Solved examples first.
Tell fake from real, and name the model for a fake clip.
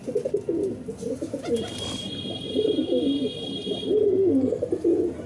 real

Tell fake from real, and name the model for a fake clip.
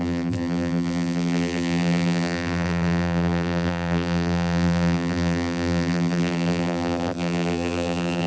fake, vocoder, BigVGAN v2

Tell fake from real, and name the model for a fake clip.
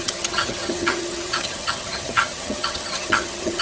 fake, vocoder, HiFi-GAN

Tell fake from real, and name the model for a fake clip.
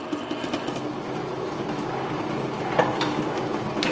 real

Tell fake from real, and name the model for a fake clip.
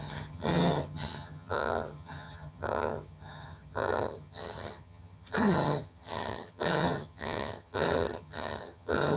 fake, vocoder, HiFi-GAN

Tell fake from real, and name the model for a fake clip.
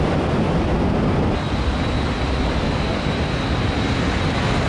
real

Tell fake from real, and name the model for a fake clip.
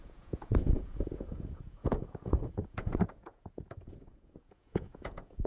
fake, vocoder, Vocos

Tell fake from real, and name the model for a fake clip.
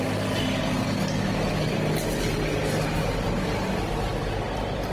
real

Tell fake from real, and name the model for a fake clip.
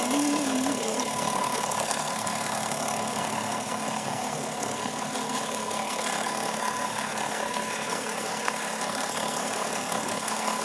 fake, codec, SNAC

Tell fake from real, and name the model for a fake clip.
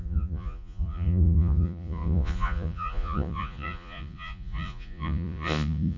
fake, vocoder, Vocos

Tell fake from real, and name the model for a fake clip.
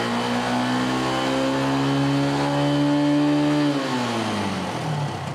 real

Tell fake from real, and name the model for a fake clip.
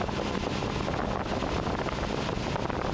real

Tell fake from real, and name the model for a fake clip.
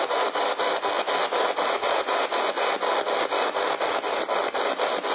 real